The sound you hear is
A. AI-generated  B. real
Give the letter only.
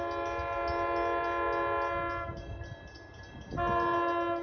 B